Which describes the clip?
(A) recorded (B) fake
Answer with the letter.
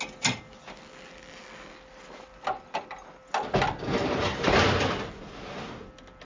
A